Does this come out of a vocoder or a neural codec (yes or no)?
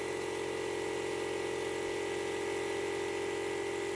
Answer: no